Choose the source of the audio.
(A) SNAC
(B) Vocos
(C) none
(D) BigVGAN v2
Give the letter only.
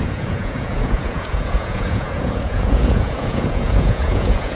B